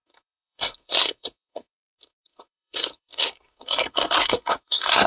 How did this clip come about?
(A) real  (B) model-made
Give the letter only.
B